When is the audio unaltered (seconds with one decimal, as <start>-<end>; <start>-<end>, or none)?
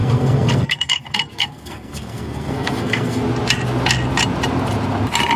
3.2-5.4